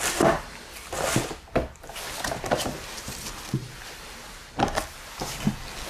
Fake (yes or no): no